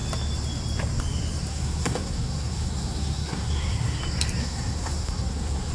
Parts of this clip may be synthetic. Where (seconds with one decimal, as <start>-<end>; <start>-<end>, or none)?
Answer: 1.5-4.0; 4.4-5.7